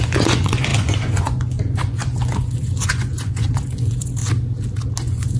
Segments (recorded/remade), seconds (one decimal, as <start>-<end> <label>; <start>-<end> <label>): 0.0-4.2 remade; 4.2-5.0 recorded; 5.0-5.4 remade